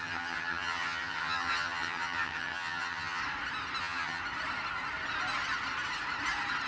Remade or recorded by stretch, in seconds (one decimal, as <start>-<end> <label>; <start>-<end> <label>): 0.0-3.2 remade; 3.2-3.8 recorded; 3.8-4.2 remade; 4.2-6.7 recorded